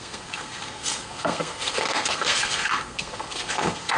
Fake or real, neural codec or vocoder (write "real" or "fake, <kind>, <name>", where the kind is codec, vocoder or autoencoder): fake, codec, SNAC